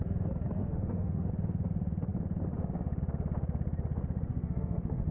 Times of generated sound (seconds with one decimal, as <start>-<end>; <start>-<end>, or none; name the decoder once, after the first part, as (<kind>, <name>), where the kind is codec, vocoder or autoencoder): 0.6-1.3 (autoencoder, DAC-VAE); 4.3-5.1